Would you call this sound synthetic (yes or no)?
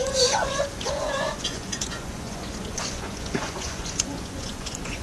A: yes